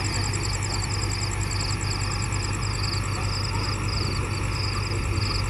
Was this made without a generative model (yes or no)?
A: yes